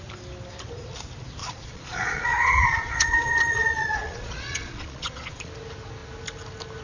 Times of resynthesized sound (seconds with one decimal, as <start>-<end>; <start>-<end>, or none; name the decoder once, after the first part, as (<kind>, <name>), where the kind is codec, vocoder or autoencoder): 1.4-5.5 (vocoder, Vocos)